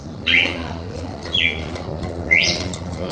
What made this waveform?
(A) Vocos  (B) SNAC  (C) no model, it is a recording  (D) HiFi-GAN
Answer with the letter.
A